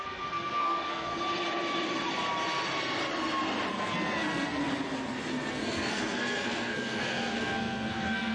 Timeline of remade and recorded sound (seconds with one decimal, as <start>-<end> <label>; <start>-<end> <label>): 0.0-1.1 remade; 1.1-3.7 recorded; 3.7-4.6 remade; 4.6-5.5 recorded; 5.5-8.3 remade